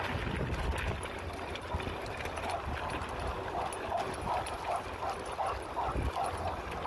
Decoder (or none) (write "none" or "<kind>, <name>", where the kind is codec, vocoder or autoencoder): none